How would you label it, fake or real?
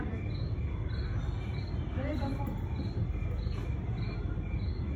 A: real